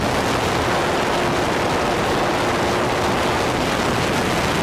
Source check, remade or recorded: recorded